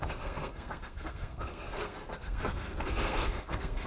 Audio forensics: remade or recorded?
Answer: remade